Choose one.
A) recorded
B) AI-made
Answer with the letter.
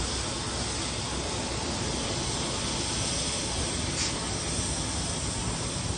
A